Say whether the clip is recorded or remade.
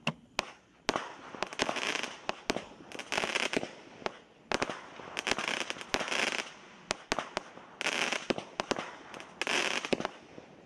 recorded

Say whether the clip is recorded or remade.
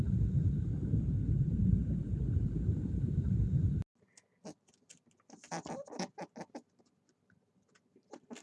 recorded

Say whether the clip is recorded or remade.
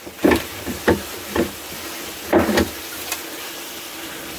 recorded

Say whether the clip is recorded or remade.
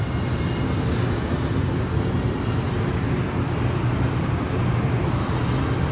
recorded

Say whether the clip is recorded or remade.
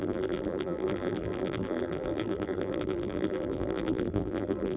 remade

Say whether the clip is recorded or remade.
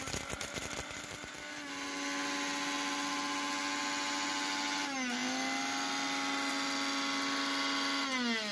recorded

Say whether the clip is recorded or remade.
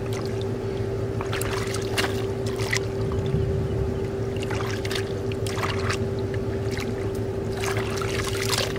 recorded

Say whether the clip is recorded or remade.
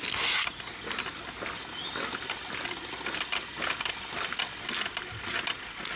recorded